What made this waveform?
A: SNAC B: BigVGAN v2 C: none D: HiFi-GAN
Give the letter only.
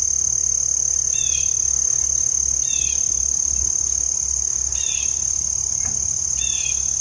C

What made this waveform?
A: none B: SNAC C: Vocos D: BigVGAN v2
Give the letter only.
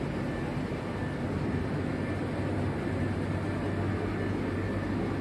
A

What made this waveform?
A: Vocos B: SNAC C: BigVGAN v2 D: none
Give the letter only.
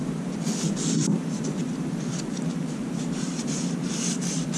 C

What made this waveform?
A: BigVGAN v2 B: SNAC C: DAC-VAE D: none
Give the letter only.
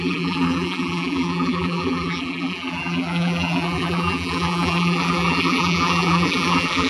A